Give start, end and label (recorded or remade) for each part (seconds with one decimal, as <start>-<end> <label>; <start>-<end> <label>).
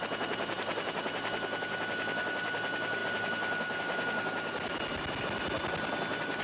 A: 0.0-6.4 recorded